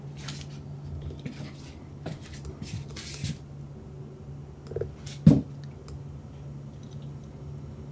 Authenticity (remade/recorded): recorded